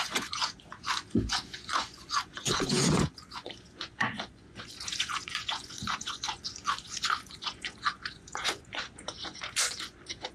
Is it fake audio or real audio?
fake